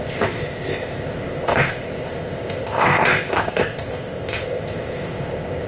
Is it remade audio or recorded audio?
remade